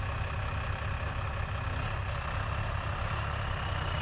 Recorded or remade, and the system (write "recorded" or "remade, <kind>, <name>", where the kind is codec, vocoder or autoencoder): recorded